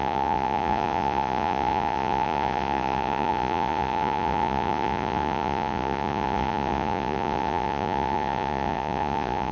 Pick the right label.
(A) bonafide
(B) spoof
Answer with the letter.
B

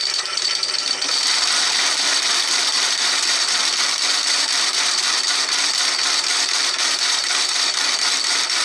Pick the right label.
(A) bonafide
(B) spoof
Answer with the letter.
B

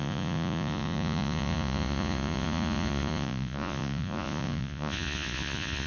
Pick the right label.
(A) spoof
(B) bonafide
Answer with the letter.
A